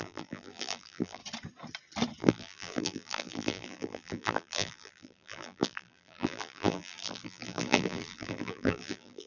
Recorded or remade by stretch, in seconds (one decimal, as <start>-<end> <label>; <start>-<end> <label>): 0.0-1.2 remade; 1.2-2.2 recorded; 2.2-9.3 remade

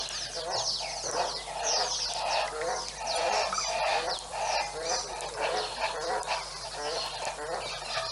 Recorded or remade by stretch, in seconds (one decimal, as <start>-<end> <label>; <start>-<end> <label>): 0.0-3.0 recorded; 3.0-5.1 remade; 5.1-8.1 recorded

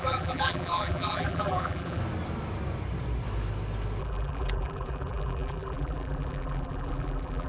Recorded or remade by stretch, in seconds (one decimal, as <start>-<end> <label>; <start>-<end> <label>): 0.0-2.0 remade; 2.0-4.0 recorded; 4.0-7.5 remade

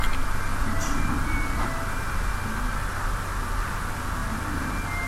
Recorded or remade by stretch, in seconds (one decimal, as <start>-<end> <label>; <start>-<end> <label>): 0.0-0.5 recorded; 0.5-2.3 remade; 2.3-5.1 recorded

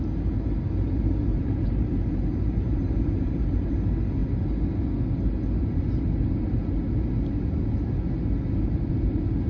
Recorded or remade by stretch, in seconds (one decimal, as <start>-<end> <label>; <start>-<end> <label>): 0.0-1.3 recorded; 1.3-3.7 remade; 3.7-9.5 recorded